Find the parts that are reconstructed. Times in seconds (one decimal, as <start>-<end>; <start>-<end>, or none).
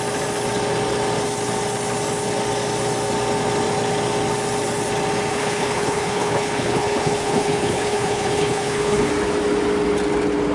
5.3-9.1